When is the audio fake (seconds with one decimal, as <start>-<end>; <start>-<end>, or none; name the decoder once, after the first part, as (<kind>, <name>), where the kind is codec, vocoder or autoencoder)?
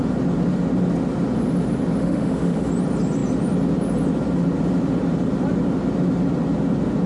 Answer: 2.0-2.7 (autoencoder, DAC-VAE)